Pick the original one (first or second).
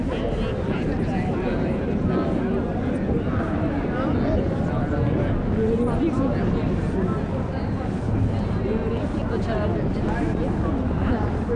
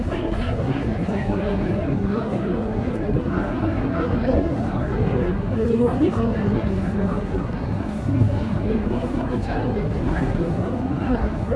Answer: first